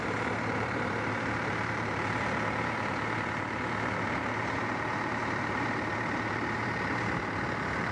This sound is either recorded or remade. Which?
remade